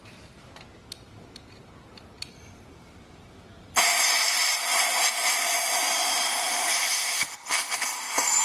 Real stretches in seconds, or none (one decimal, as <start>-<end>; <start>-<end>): 6.0-6.5